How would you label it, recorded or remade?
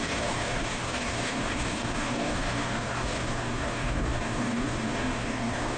remade